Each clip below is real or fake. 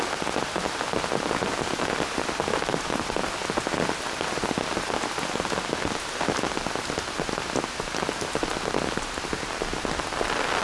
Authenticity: real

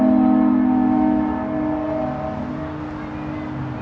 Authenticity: real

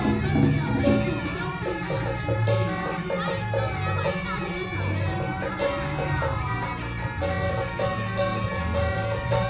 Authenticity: real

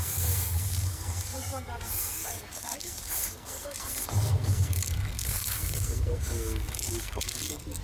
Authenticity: fake